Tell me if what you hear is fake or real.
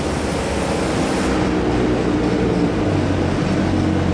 real